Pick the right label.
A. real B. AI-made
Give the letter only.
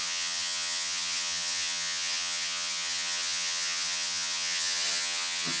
B